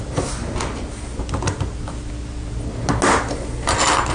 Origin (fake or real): real